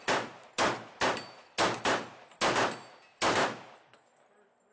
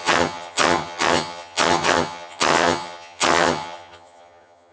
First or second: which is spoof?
second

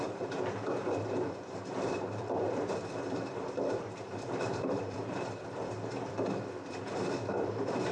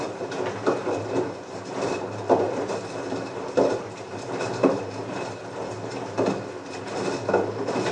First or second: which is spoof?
first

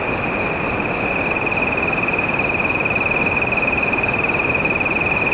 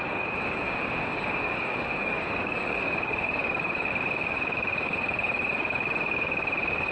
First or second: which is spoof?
second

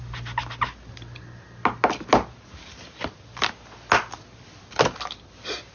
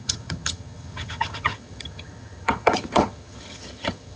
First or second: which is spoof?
second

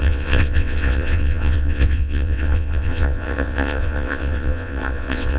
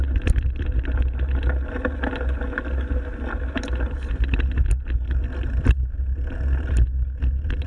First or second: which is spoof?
first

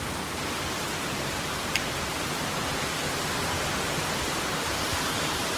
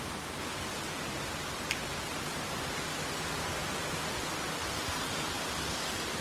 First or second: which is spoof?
first